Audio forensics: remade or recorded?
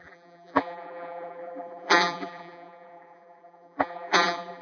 remade